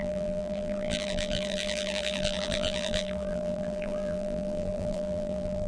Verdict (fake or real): fake